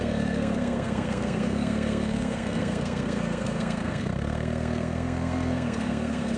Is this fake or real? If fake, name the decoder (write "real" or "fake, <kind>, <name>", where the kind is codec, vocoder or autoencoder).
fake, codec, SNAC